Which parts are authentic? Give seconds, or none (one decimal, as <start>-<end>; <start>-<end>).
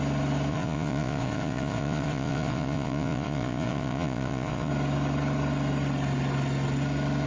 0.0-0.5; 4.7-7.3